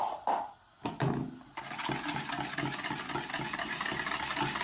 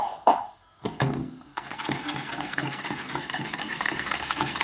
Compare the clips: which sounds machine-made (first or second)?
second